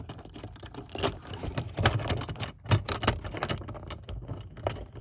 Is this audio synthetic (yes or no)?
no